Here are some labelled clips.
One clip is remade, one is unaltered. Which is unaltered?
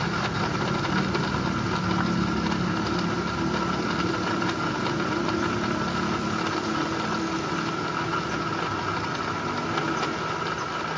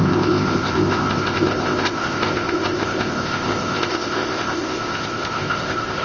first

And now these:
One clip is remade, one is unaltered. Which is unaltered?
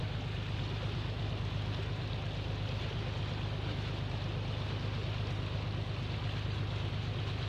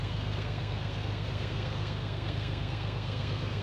first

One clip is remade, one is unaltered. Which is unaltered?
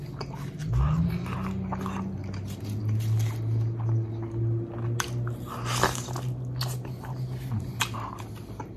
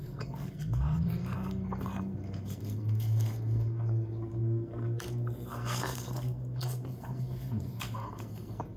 first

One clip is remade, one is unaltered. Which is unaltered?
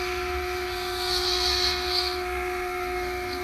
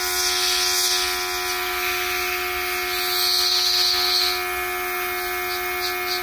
second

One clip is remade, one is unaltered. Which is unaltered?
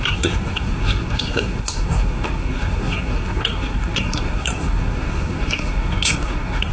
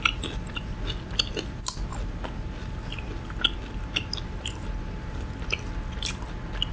second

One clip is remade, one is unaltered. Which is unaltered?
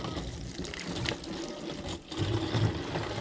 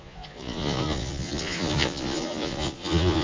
first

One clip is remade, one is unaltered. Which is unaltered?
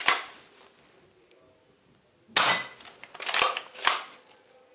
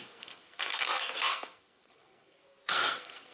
first